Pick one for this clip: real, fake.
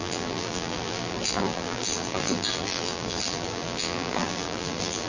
fake